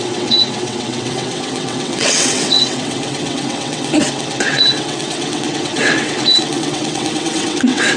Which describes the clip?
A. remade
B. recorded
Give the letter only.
A